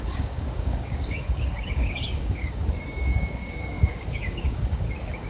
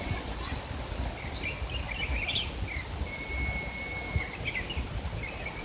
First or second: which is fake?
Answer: first